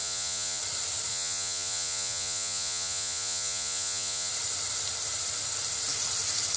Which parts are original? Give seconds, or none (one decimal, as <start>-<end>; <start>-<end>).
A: 0.6-1.1; 4.3-6.6